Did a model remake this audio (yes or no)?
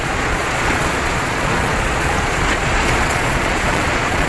yes